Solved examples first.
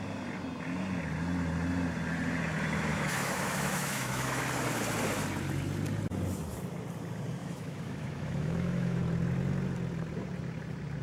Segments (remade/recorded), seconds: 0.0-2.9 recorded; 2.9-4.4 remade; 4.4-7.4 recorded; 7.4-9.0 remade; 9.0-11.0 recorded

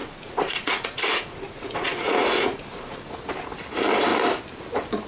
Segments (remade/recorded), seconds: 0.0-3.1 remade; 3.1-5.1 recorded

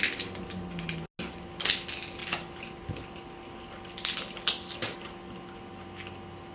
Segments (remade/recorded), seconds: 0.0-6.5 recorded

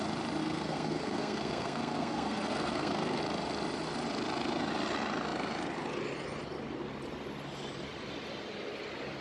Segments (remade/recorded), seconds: 0.0-0.4 recorded; 0.4-3.2 remade; 3.2-9.2 recorded

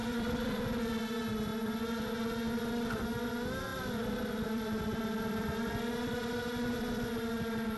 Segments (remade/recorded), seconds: 0.0-0.6 remade; 0.6-3.7 recorded; 3.7-6.3 remade; 6.3-7.8 recorded

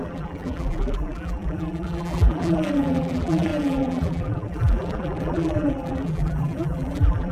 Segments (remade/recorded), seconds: 0.0-7.3 remade